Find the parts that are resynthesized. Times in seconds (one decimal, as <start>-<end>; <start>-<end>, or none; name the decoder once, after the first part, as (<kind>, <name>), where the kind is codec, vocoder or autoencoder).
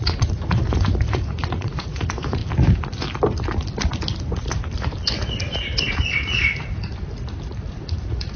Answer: 0.0-2.4 (vocoder, Vocos); 5.9-6.9; 7.7-8.4